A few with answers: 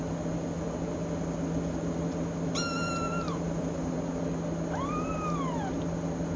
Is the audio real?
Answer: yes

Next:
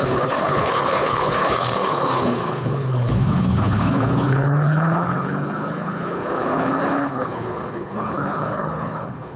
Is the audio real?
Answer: no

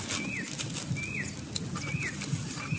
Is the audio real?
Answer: yes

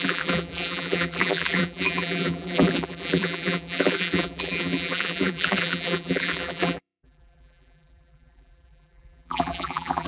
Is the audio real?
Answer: no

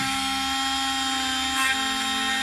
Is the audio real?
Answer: yes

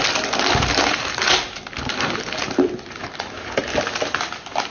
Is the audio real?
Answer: yes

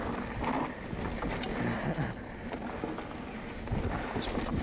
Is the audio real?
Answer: yes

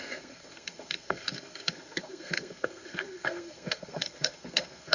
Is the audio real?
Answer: no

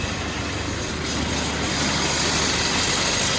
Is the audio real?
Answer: yes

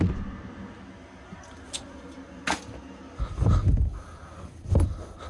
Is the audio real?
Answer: yes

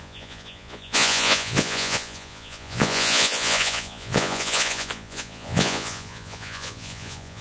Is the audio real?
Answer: no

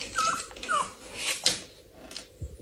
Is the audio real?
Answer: no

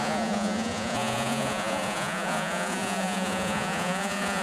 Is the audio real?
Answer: no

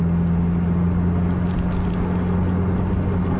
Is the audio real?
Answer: yes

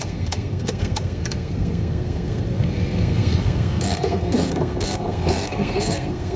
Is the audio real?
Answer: no